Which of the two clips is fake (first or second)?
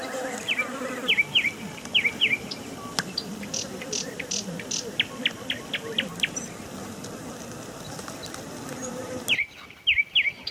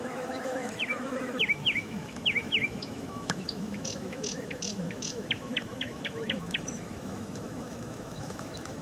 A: second